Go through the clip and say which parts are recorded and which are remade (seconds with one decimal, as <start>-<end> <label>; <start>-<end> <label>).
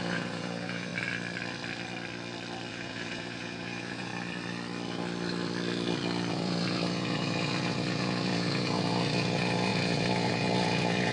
0.0-0.9 remade; 0.9-2.7 recorded; 2.7-4.1 remade; 4.1-6.3 recorded; 6.3-11.1 remade